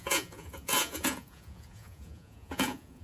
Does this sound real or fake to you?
fake